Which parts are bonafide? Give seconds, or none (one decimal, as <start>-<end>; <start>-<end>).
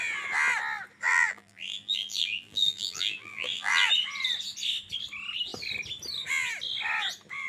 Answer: 0.0-1.1; 3.9-7.5